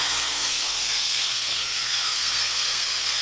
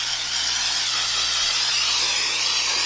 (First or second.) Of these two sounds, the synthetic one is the first